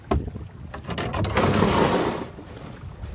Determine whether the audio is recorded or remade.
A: recorded